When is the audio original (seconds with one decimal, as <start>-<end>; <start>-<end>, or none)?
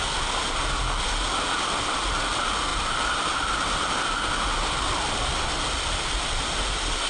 0.0-7.1